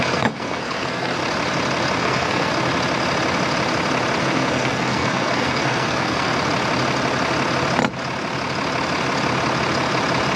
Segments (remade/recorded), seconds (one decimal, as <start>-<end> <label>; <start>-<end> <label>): 0.0-1.2 remade; 1.2-2.0 recorded; 2.0-2.5 remade; 2.5-4.2 recorded; 4.2-6.3 remade; 6.3-10.4 recorded